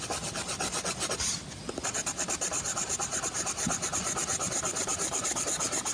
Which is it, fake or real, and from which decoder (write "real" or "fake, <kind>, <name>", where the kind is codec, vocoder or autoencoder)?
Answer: real